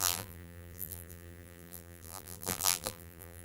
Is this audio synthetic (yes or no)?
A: yes